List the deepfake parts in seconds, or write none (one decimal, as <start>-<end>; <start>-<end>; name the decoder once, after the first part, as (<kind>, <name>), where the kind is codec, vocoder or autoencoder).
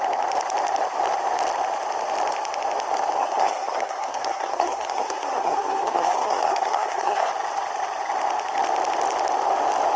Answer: 3.2-7.3 (codec, SNAC)